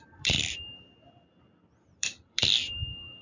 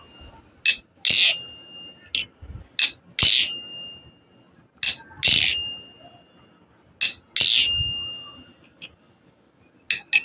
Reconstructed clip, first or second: first